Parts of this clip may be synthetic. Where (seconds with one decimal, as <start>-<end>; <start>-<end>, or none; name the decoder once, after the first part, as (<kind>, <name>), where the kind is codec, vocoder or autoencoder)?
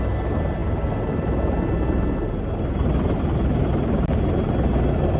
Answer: none